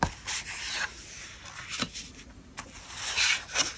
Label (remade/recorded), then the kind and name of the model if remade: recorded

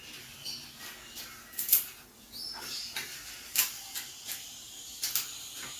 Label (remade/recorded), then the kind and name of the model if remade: recorded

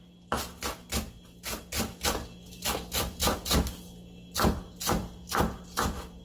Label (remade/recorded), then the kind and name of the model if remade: recorded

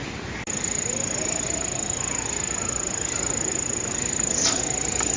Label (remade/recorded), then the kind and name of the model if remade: recorded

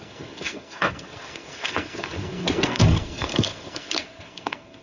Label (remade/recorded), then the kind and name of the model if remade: remade, codec, SNAC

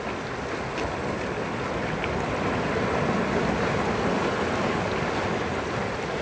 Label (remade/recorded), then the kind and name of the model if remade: recorded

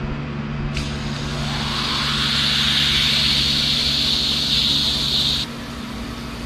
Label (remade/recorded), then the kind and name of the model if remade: recorded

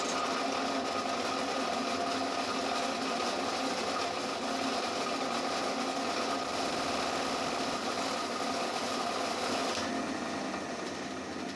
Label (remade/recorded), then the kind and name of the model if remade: recorded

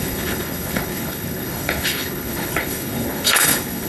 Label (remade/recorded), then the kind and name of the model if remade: remade, codec, HILCodec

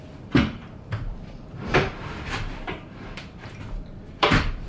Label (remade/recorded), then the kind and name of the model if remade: remade, vocoder, BigVGAN v2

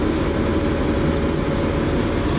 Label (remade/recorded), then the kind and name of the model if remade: recorded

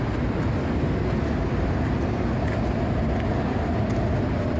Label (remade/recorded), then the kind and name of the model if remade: recorded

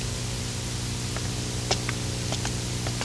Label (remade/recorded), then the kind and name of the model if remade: recorded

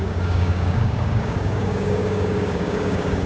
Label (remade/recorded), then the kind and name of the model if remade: remade, codec, DAC